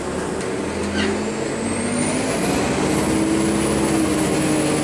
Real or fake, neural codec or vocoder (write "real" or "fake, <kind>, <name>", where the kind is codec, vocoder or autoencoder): real